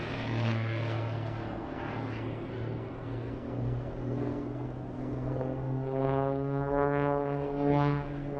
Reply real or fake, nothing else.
fake